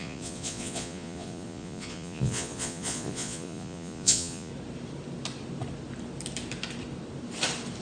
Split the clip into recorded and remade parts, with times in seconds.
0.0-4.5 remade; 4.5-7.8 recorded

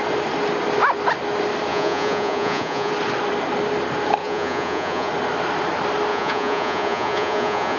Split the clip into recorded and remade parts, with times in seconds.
0.0-1.7 recorded; 1.7-2.9 remade; 2.9-4.2 recorded; 4.2-5.1 remade; 5.1-6.1 recorded; 6.1-7.8 remade

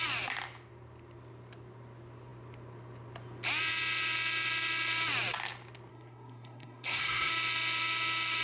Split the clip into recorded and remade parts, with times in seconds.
0.0-5.9 recorded; 5.9-7.3 remade; 7.3-8.4 recorded

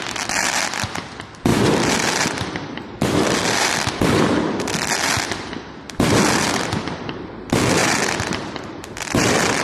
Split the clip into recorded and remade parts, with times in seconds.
0.0-1.5 recorded; 1.5-4.2 remade; 4.2-7.8 recorded; 7.8-9.2 remade; 9.2-9.6 recorded